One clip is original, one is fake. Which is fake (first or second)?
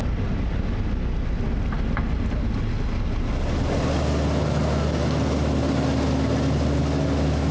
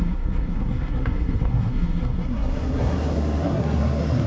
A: second